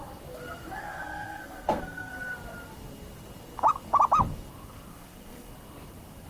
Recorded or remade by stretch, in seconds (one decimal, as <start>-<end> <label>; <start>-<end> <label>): 0.0-0.8 recorded; 0.8-2.1 remade; 2.1-4.9 recorded; 4.9-5.5 remade; 5.5-6.3 recorded